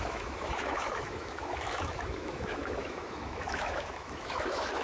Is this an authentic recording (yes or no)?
no